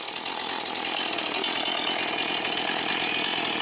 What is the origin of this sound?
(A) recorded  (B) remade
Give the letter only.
A